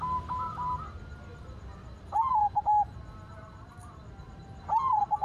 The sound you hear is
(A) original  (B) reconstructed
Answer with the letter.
A